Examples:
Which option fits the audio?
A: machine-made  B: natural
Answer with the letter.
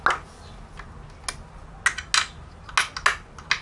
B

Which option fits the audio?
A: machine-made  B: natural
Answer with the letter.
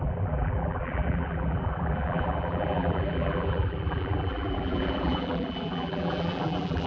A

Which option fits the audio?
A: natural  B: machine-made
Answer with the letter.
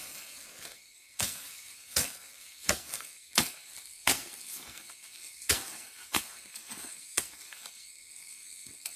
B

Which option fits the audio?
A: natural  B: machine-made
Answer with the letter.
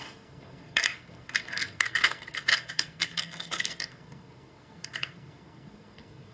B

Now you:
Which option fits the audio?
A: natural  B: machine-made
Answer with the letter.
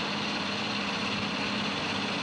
A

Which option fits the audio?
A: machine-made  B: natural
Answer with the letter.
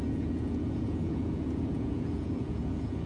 A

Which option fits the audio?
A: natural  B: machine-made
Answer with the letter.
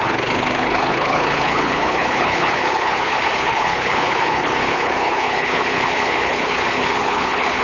B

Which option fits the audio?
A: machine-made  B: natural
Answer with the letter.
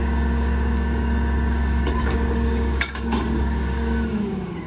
A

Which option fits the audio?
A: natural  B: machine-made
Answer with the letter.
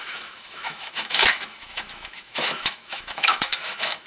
B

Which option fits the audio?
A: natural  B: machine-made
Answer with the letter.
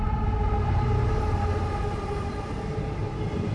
A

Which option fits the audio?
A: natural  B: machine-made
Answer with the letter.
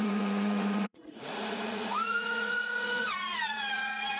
B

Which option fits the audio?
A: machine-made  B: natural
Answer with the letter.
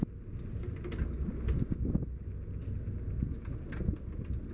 B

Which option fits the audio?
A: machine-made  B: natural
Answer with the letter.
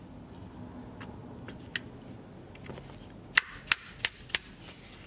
B